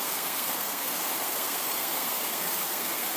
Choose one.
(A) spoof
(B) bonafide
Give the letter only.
A